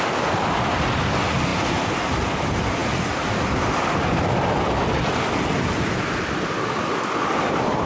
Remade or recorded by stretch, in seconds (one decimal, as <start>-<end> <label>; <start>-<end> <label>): 0.0-7.9 recorded